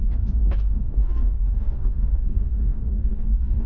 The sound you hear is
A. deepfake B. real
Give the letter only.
A